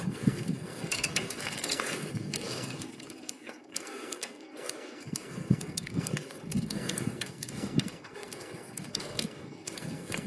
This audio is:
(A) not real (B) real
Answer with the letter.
A